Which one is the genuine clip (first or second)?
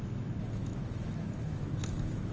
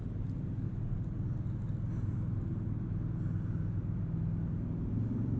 second